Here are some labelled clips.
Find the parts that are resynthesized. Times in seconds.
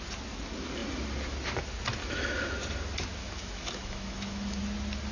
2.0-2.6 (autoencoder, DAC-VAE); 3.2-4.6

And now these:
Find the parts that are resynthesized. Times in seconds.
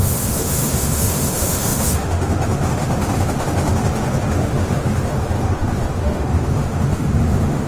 0.0-7.7 (autoencoder, DAC-VAE)